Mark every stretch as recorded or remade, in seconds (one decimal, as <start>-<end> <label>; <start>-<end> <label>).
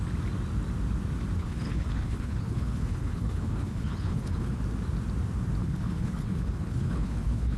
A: 0.0-1.4 recorded; 1.4-4.6 remade; 4.6-5.6 recorded; 5.6-7.6 remade